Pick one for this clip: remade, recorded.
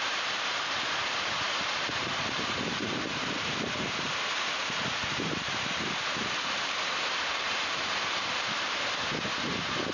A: remade